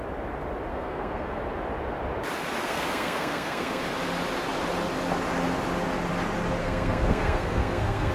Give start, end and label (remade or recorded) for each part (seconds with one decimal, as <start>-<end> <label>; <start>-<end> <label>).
0.0-0.7 recorded; 0.7-1.4 remade; 1.4-2.6 recorded; 2.6-3.8 remade; 3.8-6.6 recorded; 6.6-8.1 remade